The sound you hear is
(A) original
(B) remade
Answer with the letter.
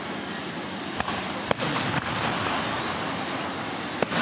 A